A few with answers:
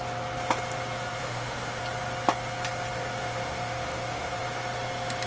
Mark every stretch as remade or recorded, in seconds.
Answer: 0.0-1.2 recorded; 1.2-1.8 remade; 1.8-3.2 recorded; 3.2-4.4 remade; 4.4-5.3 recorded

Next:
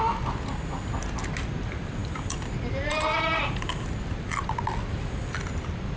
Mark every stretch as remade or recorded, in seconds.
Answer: 0.0-6.0 recorded

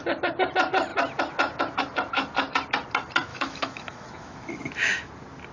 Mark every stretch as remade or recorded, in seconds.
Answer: 0.0-3.3 recorded; 3.3-5.1 remade; 5.1-5.5 recorded

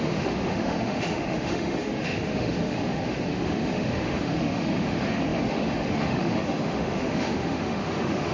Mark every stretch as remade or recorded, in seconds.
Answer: 0.0-8.3 remade

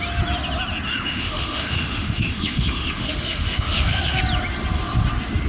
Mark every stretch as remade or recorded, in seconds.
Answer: 0.0-0.9 recorded; 0.9-4.2 remade; 4.2-5.5 recorded

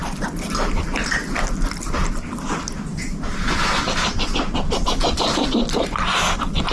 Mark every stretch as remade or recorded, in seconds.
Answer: 0.0-6.7 recorded

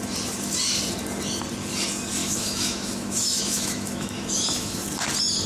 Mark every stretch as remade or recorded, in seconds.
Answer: 0.0-2.2 recorded; 2.2-4.8 remade; 4.8-5.5 recorded

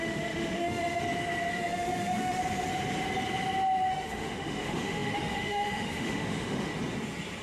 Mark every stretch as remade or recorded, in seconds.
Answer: 0.0-1.0 remade; 1.0-1.5 recorded; 1.5-2.4 remade; 2.4-3.9 recorded; 3.9-6.7 remade; 6.7-7.4 recorded